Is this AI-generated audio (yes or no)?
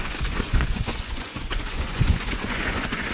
yes